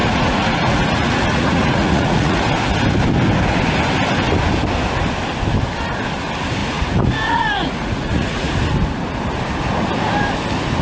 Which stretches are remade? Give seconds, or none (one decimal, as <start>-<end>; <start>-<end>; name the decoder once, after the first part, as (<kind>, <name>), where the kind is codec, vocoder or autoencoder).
0.0-2.4 (vocoder, Vocos); 6.6-8.5